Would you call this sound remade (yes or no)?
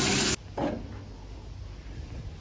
no